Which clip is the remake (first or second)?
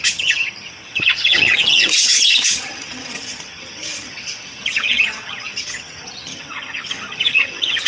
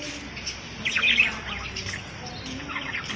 first